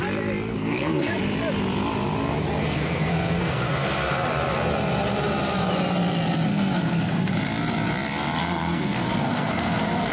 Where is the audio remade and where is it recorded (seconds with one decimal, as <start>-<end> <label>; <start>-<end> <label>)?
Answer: 0.0-0.5 recorded; 0.5-1.2 remade; 1.2-2.6 recorded; 2.6-3.7 remade; 3.7-6.5 recorded; 6.5-7.3 remade; 7.3-8.4 recorded; 8.4-10.1 remade